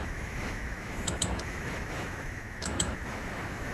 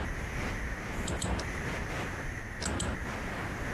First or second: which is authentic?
second